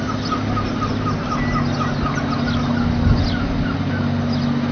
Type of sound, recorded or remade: recorded